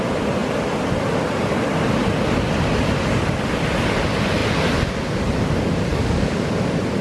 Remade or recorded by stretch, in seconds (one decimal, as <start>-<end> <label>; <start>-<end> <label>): 0.0-5.9 recorded; 5.9-6.5 remade; 6.5-7.0 recorded